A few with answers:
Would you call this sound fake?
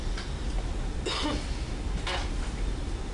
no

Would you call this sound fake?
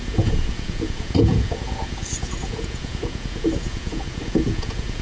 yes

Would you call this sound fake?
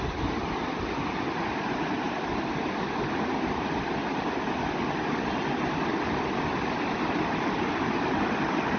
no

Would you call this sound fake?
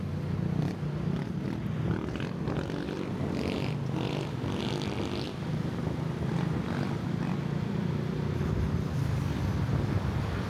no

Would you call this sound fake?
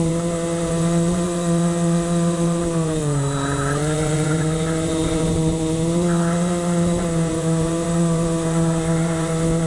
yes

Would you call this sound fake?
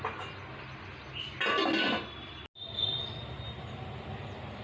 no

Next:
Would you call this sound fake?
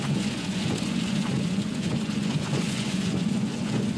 yes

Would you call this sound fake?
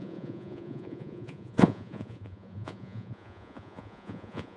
yes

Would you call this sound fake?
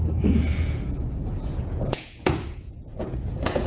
yes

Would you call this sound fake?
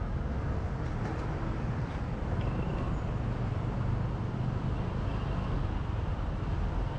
no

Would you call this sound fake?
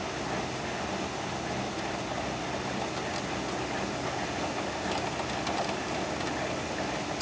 no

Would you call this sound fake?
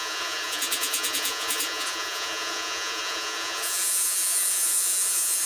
yes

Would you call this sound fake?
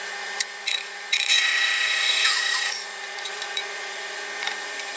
yes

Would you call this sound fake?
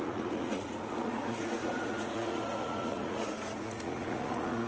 yes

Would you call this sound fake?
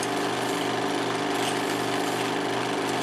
no